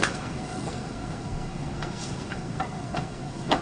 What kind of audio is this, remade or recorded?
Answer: remade